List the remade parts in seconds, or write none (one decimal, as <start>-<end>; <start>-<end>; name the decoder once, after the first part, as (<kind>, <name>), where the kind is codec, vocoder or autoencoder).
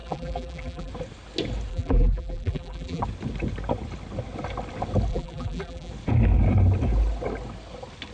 0.0-0.9 (vocoder, BigVGAN v2); 1.7-3.0; 5.1-5.9